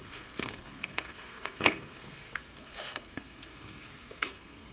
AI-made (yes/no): yes